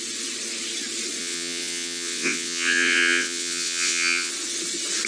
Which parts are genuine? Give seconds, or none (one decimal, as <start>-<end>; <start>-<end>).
0.0-1.2; 4.3-5.1